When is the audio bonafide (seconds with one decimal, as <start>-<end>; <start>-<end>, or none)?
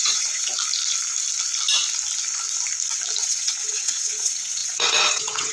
0.4-3.2